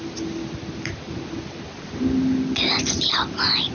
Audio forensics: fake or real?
real